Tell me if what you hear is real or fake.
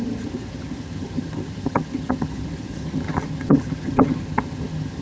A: fake